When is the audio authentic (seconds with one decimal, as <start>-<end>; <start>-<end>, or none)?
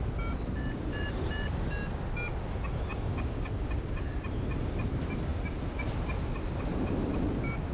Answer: 0.0-2.9; 3.5-7.7